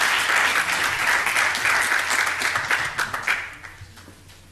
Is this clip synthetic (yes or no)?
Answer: no